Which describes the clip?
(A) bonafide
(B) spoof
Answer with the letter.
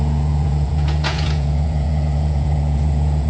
B